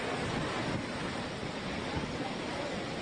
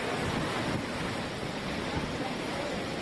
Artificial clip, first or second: first